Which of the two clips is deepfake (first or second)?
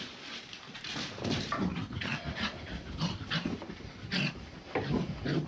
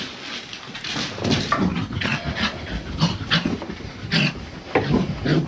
first